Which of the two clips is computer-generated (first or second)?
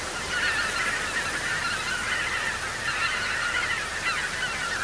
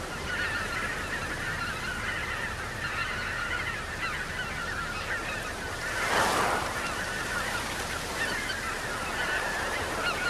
second